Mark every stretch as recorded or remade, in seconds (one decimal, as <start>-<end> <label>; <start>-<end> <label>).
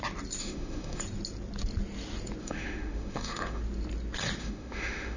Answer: 0.0-0.4 recorded; 0.4-1.0 remade; 1.0-2.4 recorded; 2.4-3.6 remade; 3.6-4.4 recorded; 4.4-5.2 remade